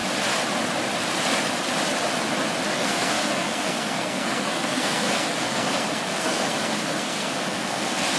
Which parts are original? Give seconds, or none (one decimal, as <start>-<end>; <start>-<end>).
0.0-2.7